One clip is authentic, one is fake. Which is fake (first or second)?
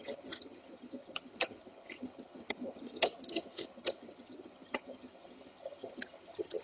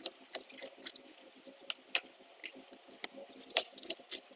first